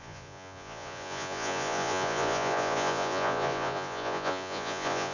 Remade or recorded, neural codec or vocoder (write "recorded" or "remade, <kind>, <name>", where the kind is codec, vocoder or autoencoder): remade, vocoder, Vocos